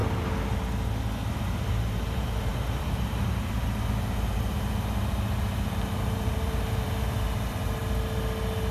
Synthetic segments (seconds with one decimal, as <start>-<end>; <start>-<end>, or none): 1.4-7.8